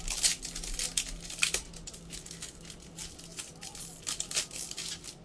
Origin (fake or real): real